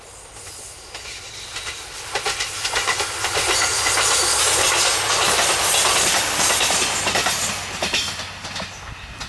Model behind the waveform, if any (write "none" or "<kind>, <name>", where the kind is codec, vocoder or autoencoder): none